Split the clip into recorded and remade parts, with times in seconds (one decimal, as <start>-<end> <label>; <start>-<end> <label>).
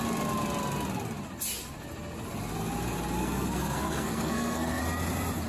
0.0-3.2 recorded; 3.2-4.8 remade; 4.8-5.5 recorded